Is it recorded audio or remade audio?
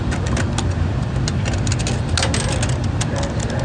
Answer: recorded